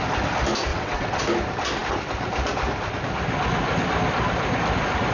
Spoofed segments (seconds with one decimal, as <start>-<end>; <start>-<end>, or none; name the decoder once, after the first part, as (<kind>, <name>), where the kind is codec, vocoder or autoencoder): 0.7-1.2 (vocoder, WaveNeXt)